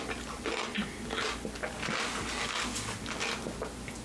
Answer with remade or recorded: recorded